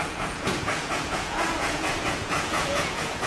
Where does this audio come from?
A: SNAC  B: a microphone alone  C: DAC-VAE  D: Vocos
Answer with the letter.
D